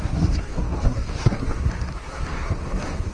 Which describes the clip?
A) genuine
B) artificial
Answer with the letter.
B